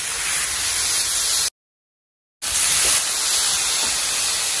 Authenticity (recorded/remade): recorded